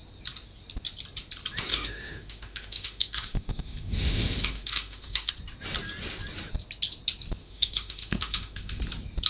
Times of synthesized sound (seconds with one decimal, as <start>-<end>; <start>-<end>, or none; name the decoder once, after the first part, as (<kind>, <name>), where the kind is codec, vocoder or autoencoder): 1.7-5.3 (autoencoder, DAC-VAE); 7.4-8.8